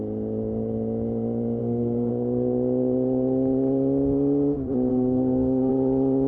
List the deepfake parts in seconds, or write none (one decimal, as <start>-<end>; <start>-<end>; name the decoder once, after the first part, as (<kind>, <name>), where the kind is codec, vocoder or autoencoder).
1.6-2.1 (codec, SNAC); 4.9-5.7

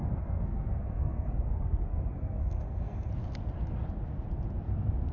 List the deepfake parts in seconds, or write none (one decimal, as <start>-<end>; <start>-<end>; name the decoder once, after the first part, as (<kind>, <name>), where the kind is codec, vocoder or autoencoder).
0.0-3.1 (codec, SNAC)

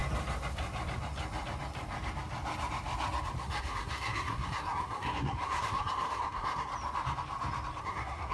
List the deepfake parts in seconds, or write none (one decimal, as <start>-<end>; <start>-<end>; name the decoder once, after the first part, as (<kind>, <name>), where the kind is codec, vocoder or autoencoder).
3.4-6.7 (codec, SNAC); 7.8-8.3

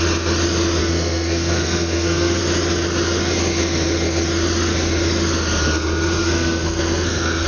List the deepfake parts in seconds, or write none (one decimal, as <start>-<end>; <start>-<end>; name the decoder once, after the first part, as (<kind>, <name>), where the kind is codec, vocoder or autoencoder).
0.8-2.4 (codec, SNAC); 6.2-7.5